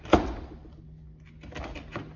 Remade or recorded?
recorded